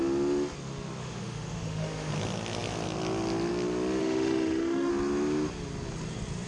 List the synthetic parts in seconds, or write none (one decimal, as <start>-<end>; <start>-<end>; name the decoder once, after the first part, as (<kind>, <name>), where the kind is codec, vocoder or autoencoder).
1.0-2.1 (autoencoder, DAC-VAE); 4.0-4.9